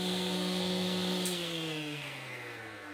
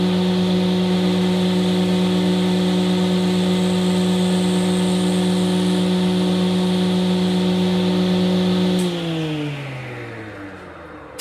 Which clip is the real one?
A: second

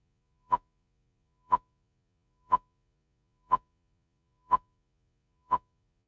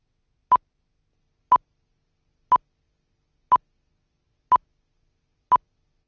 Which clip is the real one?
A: second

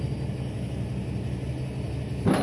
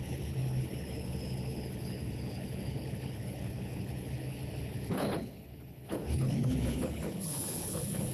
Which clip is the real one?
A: first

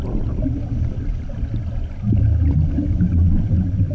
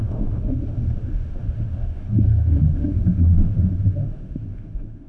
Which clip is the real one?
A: first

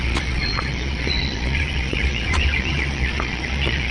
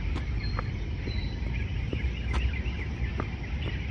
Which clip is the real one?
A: second